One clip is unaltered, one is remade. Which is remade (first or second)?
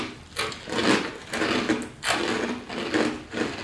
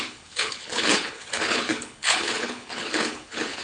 second